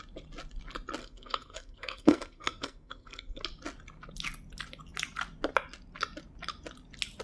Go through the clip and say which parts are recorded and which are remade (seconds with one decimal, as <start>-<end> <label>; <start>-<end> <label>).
0.0-1.0 recorded; 1.0-3.4 remade; 3.4-7.2 recorded